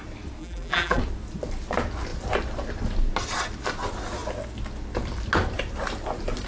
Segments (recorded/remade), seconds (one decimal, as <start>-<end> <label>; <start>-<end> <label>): 0.0-0.4 recorded; 0.4-1.0 remade; 1.0-6.5 recorded